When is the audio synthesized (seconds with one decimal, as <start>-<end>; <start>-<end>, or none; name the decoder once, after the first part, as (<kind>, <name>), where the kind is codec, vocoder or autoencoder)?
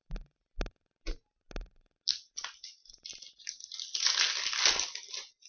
none